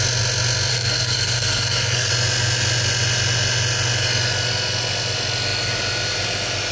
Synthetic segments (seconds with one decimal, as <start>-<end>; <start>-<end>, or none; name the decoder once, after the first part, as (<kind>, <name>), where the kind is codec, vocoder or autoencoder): 0.7-2.1 (codec, SNAC)

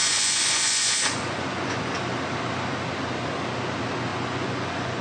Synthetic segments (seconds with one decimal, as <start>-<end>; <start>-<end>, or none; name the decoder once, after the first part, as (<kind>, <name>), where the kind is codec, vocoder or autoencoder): 0.0-1.9 (vocoder, Vocos); 4.1-5.0

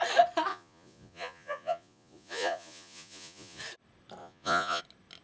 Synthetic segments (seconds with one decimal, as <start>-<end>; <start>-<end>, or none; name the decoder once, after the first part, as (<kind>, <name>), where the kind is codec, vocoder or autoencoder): 0.5-3.6 (vocoder, Vocos); 4.2-4.8

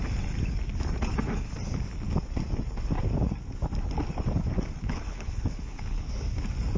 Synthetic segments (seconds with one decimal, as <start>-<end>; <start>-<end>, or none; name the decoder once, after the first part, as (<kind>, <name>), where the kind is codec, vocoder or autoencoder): 4.8-6.1 (codec, HILCodec)